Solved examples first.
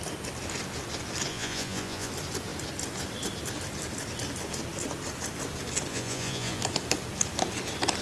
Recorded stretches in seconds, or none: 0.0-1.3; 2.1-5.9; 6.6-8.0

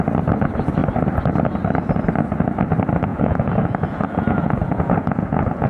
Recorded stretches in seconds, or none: 0.0-3.1

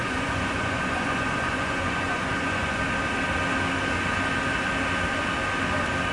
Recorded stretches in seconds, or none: 2.8-6.1

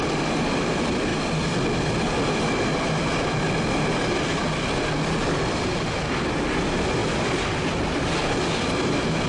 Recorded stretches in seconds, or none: 0.0-9.3